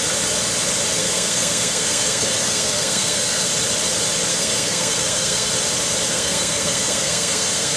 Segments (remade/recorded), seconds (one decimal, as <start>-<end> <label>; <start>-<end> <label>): 0.0-1.0 recorded; 1.0-3.5 remade; 3.5-4.3 recorded; 4.3-5.5 remade; 5.5-6.1 recorded; 6.1-7.8 remade